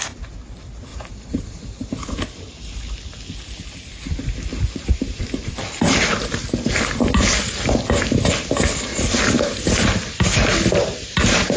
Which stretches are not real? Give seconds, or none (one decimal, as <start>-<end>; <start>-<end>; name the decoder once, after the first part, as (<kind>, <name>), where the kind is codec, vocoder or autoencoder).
0.9-2.1 (vocoder, BigVGAN v2); 4.5-5.2; 8.9-9.6